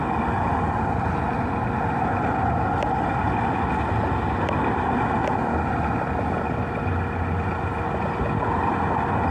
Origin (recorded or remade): recorded